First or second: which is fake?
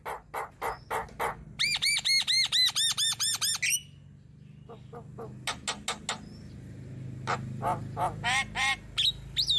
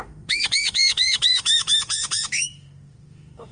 second